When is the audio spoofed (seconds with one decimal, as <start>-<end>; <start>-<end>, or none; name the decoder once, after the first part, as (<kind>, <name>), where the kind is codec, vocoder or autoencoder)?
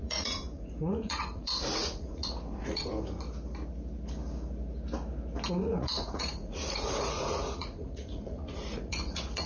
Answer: 0.0-2.9 (vocoder, Vocos); 5.6-9.5